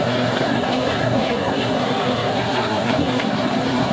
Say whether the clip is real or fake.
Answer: fake